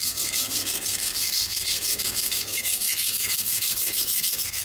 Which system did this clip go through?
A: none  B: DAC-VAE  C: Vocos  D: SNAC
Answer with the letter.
D